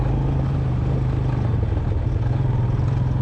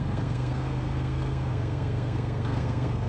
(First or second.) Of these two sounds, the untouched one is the first